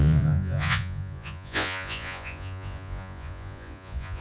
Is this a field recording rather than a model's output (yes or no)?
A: no